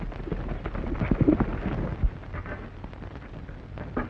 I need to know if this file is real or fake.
real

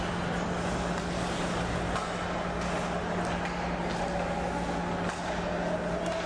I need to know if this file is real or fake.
real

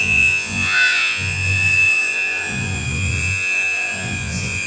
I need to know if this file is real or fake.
fake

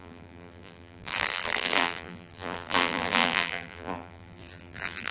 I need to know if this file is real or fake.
fake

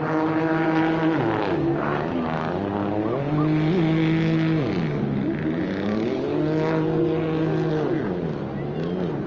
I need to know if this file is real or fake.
real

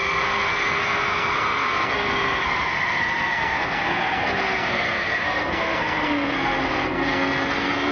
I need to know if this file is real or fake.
fake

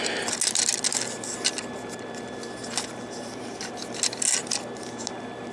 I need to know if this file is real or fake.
real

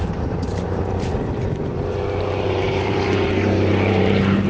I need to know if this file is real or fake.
fake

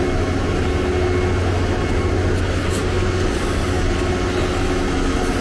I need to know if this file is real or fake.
real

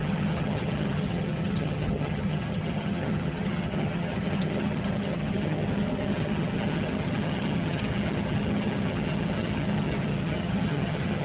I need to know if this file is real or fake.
fake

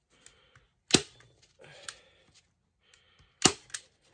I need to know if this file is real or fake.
real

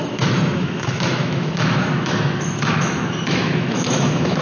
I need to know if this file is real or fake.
fake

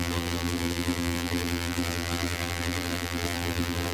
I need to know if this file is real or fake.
fake